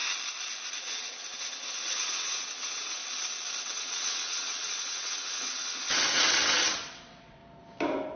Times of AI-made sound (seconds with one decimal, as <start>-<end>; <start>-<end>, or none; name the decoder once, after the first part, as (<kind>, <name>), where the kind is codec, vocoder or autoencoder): 0.7-3.0 (vocoder, WaveNeXt); 3.6-7.4